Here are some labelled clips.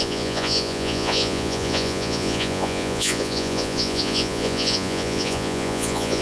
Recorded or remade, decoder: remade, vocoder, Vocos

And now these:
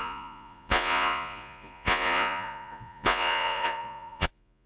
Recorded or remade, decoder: remade, vocoder, Vocos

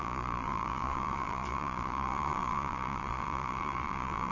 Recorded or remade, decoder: remade, vocoder, Vocos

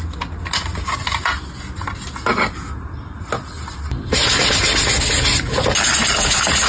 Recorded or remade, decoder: recorded